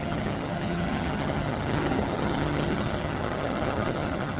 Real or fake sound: fake